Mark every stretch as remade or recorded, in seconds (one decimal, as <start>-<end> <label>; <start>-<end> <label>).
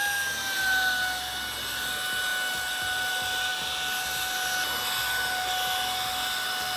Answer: 0.0-6.8 recorded